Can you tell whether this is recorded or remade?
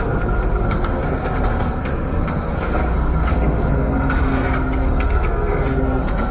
remade